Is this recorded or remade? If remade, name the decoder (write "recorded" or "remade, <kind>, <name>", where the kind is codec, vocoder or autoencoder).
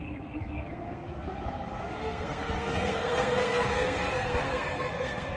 remade, codec, SNAC